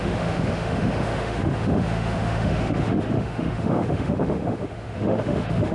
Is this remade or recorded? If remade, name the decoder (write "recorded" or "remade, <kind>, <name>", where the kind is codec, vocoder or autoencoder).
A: remade, autoencoder, DAC-VAE